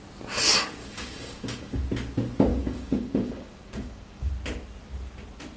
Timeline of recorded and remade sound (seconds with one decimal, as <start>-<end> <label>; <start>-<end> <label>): 0.0-0.8 recorded; 0.8-1.8 remade; 1.8-2.5 recorded; 2.5-4.3 remade; 4.3-5.6 recorded